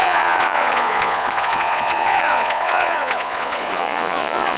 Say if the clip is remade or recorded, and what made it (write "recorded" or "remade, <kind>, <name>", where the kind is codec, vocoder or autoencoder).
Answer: remade, vocoder, Vocos